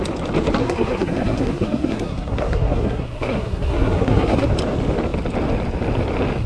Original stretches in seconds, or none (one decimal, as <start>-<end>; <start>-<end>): 0.0-0.6; 4.5-6.5